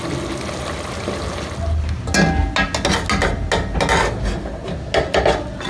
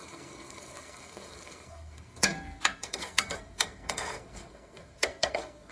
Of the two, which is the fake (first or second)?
second